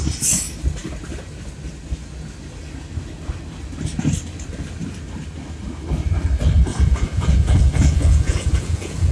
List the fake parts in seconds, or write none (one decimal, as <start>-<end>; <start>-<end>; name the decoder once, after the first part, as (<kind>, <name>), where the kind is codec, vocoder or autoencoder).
6.7-9.1 (vocoder, Vocos)